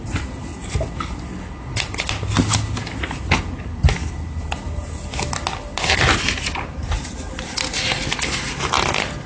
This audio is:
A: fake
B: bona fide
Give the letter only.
B